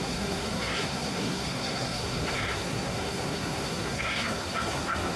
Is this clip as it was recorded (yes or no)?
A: no